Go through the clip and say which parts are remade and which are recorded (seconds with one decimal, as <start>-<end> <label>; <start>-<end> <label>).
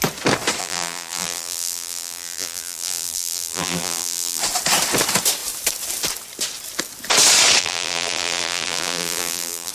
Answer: 0.0-0.6 recorded; 0.6-4.4 remade; 4.4-7.6 recorded; 7.6-9.7 remade